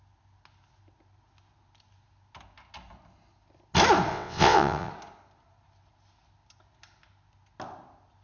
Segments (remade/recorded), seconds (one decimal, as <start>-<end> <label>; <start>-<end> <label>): 0.0-4.1 recorded; 4.1-4.9 remade; 4.9-8.2 recorded